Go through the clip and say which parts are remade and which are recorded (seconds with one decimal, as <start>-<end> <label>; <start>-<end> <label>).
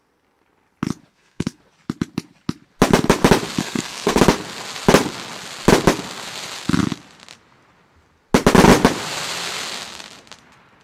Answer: 0.0-1.1 recorded; 1.1-1.6 remade; 1.6-3.6 recorded; 3.6-4.2 remade; 4.2-10.8 recorded